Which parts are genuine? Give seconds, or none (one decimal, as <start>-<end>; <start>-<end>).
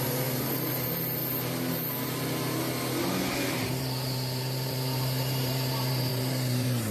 1.2-3.5